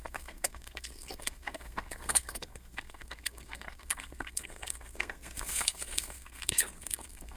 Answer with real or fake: fake